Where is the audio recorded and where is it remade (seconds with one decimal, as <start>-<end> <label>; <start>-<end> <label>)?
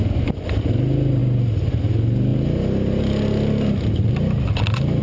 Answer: 0.0-5.0 recorded